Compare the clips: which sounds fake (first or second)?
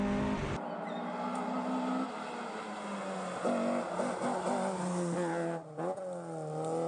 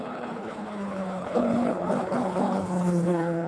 second